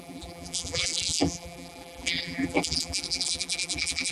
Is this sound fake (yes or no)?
yes